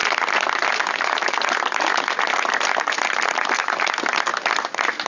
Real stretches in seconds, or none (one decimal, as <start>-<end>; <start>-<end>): 0.0-5.1